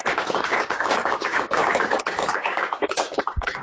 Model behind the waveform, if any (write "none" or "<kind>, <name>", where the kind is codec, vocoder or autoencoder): codec, DAC